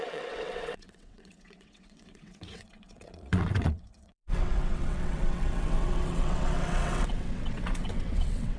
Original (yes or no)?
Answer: no